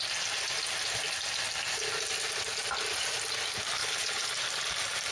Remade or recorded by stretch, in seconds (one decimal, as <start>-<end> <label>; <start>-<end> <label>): 0.0-3.8 recorded; 3.8-4.3 remade; 4.3-5.1 recorded